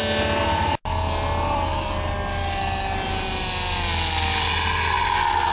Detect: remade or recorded recorded